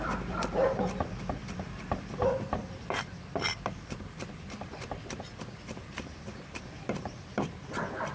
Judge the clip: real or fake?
fake